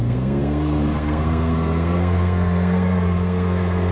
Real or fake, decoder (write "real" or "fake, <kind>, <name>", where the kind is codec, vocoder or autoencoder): fake, codec, SNAC